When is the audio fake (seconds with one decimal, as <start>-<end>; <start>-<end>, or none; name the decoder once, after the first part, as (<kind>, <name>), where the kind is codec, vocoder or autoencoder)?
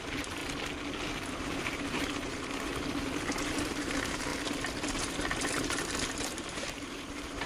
0.0-0.4 (vocoder, BigVGAN v2); 1.3-2.7; 3.7-4.3; 5.9-7.5